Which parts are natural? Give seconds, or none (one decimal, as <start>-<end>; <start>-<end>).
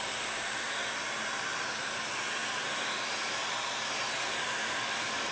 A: none